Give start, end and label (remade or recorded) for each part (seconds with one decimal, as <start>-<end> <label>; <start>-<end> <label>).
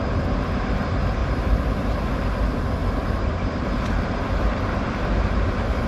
0.0-1.2 recorded; 1.2-2.1 remade; 2.1-2.8 recorded; 2.8-4.4 remade; 4.4-5.9 recorded